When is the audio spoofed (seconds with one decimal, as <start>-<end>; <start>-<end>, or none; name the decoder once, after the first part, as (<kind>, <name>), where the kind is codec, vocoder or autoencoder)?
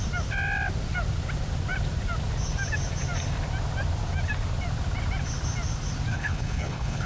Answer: 6.1-7.1 (codec, HILCodec)